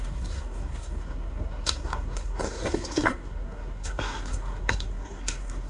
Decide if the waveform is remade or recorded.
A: remade